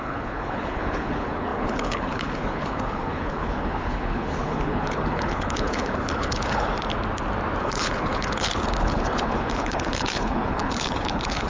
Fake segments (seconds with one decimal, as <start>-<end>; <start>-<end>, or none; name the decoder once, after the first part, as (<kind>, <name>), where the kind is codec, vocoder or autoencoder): 0.0-6.7 (codec, HILCodec); 7.6-11.5